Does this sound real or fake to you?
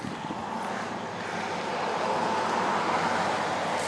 real